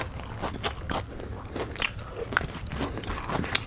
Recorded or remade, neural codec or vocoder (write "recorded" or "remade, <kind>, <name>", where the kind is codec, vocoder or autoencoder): recorded